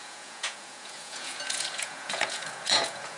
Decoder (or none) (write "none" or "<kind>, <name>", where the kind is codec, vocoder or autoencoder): vocoder, Vocos